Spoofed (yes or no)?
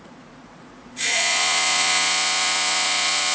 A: yes